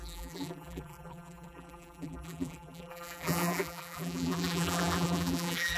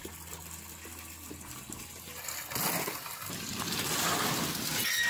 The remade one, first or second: first